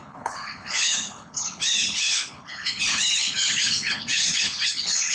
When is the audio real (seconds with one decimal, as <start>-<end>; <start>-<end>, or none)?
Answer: none